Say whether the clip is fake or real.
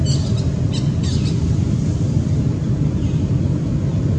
real